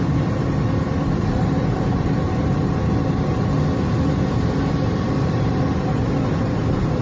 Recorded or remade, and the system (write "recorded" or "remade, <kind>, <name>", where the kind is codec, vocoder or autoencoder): remade, vocoder, BigVGAN v2